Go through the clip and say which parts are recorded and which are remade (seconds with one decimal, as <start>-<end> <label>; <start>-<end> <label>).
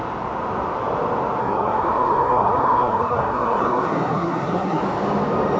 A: 0.0-1.4 recorded; 1.4-4.8 remade; 4.8-5.6 recorded